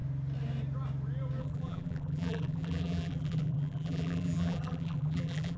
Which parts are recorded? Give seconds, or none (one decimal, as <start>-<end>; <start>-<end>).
0.0-1.4